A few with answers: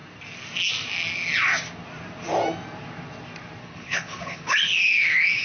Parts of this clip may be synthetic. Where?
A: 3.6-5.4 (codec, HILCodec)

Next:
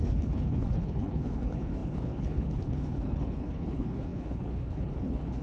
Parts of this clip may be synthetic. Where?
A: 0.0-5.4 (codec, HILCodec)